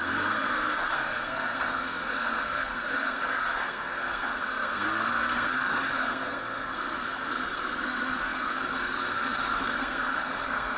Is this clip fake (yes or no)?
yes